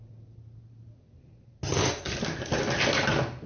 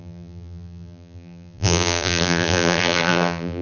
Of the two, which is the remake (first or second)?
second